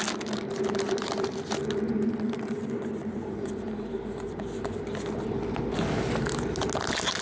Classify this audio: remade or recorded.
recorded